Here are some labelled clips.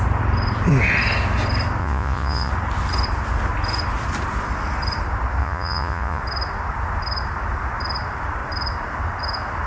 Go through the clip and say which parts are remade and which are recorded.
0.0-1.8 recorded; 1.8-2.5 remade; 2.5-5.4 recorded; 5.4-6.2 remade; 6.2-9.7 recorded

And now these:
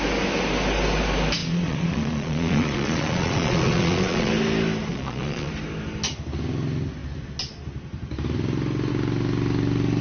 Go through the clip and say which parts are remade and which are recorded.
0.0-1.4 recorded; 1.4-4.3 remade; 4.3-4.9 recorded; 4.9-5.5 remade; 5.5-10.0 recorded